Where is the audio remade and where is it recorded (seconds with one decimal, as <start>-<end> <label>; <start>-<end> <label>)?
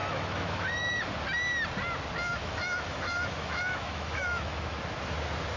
0.0-1.0 remade; 1.0-2.3 recorded; 2.3-4.8 remade; 4.8-5.6 recorded